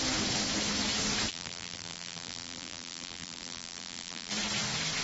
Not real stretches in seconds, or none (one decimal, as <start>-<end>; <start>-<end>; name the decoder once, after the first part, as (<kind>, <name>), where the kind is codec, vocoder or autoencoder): 1.3-4.3 (vocoder, BigVGAN v2)

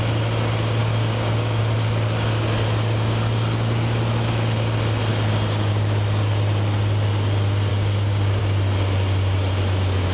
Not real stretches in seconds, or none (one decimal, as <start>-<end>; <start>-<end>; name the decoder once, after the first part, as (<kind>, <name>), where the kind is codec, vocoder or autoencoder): 0.8-1.6 (codec, DAC); 5.1-5.7; 7.7-8.4

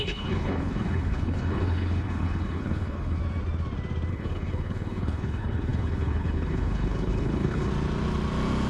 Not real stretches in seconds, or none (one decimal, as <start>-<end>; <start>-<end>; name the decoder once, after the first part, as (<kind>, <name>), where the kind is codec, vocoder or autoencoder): 0.0-3.2 (codec, HILCodec); 4.1-7.7

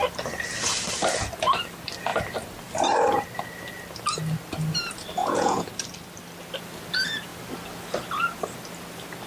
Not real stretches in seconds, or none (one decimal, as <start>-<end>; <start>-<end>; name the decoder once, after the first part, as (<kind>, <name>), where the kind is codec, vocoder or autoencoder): 5.2-5.7 (vocoder, Vocos)

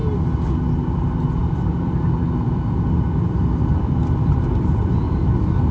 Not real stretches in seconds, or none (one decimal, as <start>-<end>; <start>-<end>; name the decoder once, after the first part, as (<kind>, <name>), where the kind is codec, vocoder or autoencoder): 1.4-4.8 (vocoder, BigVGAN v2)

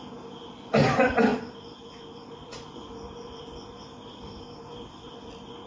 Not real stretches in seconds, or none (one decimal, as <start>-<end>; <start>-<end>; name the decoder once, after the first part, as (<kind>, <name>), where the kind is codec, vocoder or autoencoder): none